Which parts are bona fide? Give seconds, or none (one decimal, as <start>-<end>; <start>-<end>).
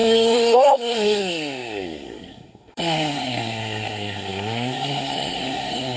none